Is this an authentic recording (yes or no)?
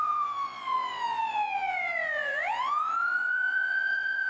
no